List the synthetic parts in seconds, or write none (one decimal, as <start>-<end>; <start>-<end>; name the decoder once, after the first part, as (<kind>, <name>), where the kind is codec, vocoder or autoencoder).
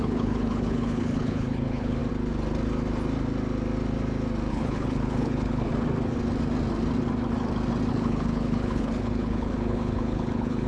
0.0-2.0 (codec, HILCodec); 4.5-5.7; 7.9-10.7